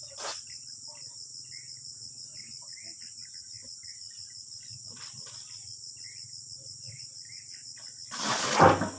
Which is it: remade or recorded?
recorded